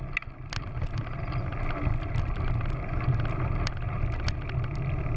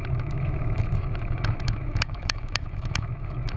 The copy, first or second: second